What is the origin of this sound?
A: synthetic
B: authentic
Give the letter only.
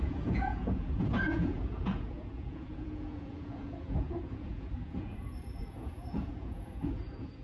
A